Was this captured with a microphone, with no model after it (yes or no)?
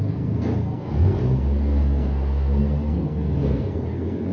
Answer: no